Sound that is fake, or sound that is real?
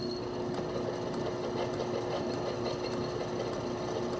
real